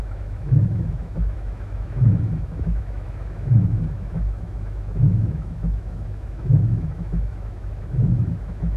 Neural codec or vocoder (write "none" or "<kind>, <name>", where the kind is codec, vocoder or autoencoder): autoencoder, DAC-VAE